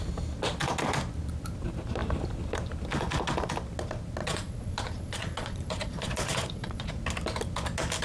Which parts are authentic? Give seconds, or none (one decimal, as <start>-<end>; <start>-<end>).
0.0-4.2; 6.9-8.0